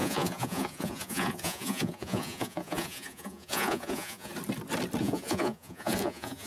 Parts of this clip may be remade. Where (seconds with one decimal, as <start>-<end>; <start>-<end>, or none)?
0.0-4.3; 5.0-6.5